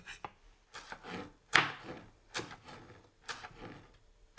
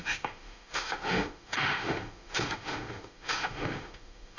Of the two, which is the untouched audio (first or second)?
first